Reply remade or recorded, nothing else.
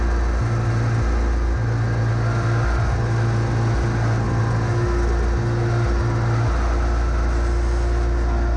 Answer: recorded